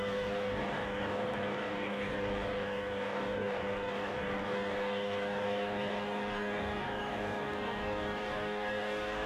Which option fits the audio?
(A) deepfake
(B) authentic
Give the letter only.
A